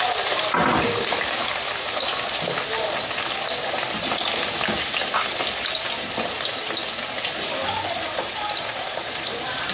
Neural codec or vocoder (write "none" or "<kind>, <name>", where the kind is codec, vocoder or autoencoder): none